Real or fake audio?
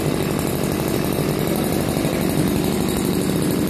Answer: fake